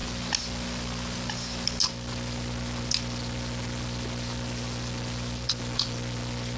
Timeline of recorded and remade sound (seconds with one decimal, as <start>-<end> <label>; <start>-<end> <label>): 0.0-6.6 recorded

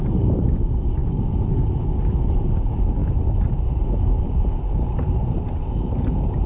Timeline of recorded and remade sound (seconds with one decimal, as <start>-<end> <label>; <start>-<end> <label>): 0.0-6.5 recorded

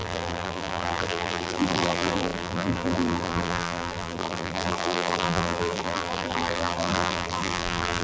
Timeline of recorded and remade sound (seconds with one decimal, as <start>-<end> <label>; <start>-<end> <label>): 0.0-8.0 remade

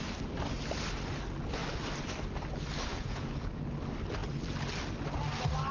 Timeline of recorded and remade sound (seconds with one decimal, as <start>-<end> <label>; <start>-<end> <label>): 0.0-2.9 recorded; 2.9-3.6 remade; 3.6-5.7 recorded

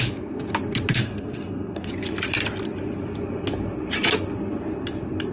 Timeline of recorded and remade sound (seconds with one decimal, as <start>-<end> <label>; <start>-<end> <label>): 0.0-1.0 recorded; 1.0-1.9 remade; 1.9-5.3 recorded